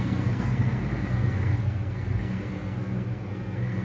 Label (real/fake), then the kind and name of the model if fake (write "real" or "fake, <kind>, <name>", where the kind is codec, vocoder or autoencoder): fake, codec, SNAC